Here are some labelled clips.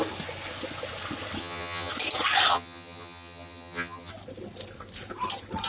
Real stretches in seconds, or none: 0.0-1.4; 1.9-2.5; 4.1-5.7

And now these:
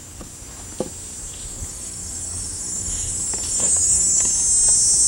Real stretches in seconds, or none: 0.0-1.5; 4.2-5.1

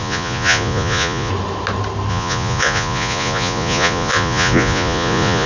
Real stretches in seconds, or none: 1.3-2.1

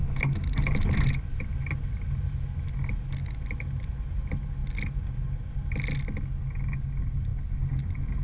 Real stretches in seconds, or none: 0.0-8.2

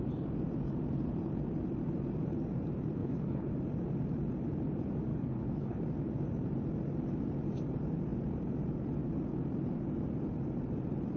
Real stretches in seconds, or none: 0.0-3.0; 3.5-5.1; 5.8-11.2